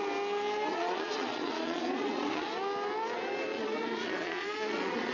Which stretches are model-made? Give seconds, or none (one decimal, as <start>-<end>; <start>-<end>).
0.7-2.5; 3.5-5.1